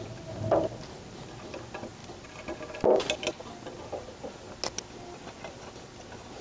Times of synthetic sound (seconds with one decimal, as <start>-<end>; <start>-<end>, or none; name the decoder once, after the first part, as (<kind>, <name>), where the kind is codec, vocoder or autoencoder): none